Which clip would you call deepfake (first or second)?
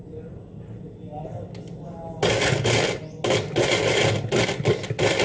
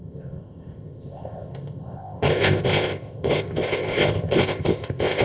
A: second